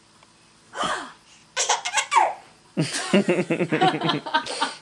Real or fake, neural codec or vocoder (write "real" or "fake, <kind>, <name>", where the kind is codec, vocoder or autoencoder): real